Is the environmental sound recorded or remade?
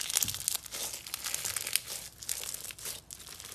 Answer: recorded